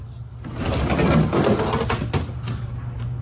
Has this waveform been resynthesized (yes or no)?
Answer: no